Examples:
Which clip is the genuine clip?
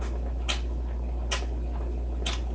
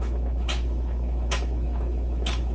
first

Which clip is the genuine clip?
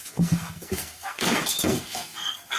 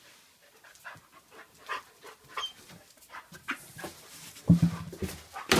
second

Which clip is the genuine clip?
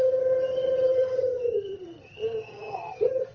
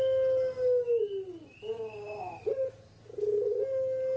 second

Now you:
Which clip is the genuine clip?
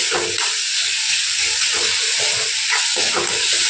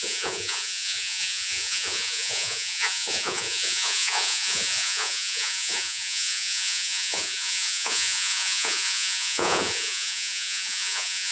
first